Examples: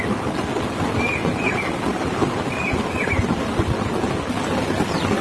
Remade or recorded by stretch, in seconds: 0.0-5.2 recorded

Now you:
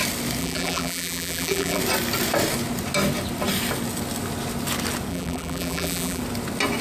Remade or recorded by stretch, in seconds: 0.0-0.4 recorded; 0.4-1.8 remade; 1.8-5.1 recorded; 5.1-6.2 remade; 6.2-6.8 recorded

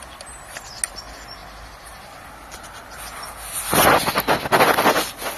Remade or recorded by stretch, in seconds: 0.0-5.4 recorded

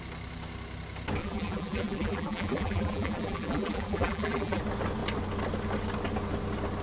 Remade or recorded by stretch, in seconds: 0.0-1.2 recorded; 1.2-4.6 remade; 4.6-6.8 recorded

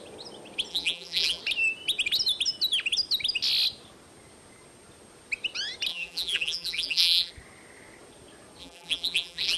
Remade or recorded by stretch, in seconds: 0.0-0.7 recorded; 0.7-1.4 remade; 1.4-5.9 recorded; 5.9-7.3 remade; 7.3-8.6 recorded; 8.6-9.6 remade